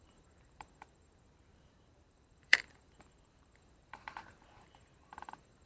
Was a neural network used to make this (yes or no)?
yes